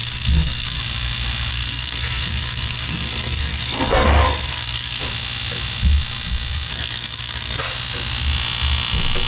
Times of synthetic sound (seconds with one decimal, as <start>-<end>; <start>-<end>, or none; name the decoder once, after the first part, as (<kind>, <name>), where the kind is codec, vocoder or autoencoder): 0.0-0.8 (codec, SNAC); 1.5-5.0; 6.7-7.6